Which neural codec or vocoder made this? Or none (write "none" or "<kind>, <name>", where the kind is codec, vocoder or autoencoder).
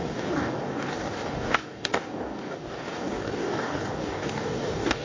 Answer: codec, DAC